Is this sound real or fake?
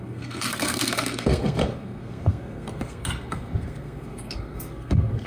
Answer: fake